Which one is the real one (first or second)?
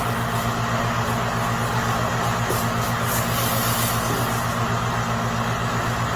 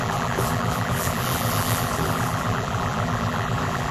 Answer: first